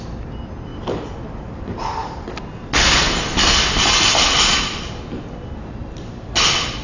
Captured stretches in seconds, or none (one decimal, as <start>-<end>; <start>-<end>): 0.0-6.8